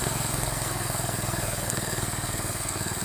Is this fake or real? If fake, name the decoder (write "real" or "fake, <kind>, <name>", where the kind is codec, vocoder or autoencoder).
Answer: fake, codec, SNAC